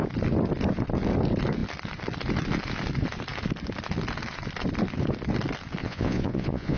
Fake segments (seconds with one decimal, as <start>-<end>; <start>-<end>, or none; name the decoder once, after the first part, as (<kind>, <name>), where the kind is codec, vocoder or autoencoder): 5.8-6.8 (vocoder, Vocos)